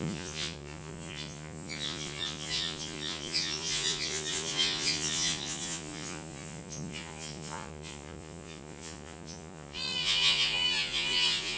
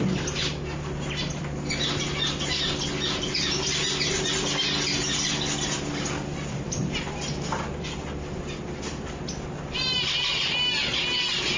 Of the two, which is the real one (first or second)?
second